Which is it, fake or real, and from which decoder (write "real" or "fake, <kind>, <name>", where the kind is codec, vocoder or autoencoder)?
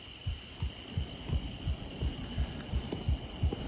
fake, vocoder, BigVGAN v2